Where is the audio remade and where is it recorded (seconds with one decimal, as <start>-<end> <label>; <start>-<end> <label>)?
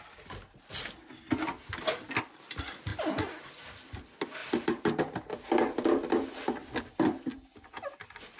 0.0-8.4 recorded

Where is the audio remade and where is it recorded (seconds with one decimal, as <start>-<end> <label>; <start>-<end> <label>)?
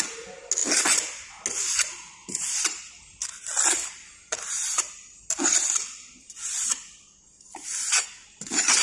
0.0-2.2 recorded; 2.2-3.5 remade; 3.5-8.8 recorded